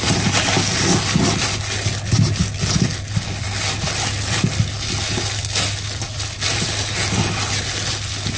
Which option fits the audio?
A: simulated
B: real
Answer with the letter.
B